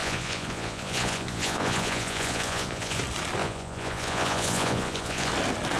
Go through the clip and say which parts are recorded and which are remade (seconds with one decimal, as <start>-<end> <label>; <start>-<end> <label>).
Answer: 0.0-3.0 remade; 3.0-3.4 recorded; 3.4-5.3 remade; 5.3-5.8 recorded